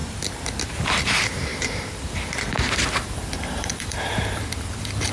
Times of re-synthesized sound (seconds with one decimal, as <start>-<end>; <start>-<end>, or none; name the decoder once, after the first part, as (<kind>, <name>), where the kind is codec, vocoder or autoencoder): 0.7-5.1 (vocoder, BigVGAN v2)